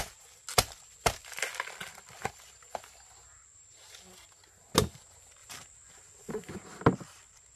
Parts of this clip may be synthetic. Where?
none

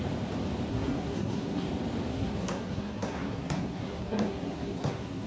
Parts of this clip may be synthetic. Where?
0.7-1.7 (codec, SNAC); 2.1-5.3

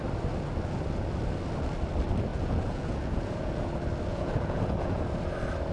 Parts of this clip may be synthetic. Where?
2.3-3.5 (vocoder, Vocos); 4.1-5.0

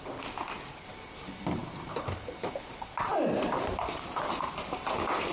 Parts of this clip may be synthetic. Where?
none

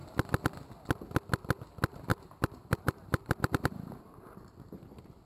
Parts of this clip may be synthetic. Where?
2.1-4.0 (vocoder, BigVGAN v2)

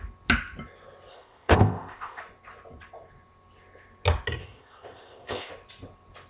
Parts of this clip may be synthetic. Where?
1.1-2.2 (codec, ZipCodec); 4.4-5.5